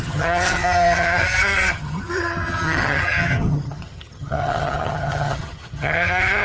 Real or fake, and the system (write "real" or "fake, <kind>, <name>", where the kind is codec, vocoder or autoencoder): fake, vocoder, HiFi-GAN